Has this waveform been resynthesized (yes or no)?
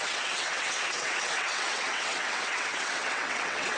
yes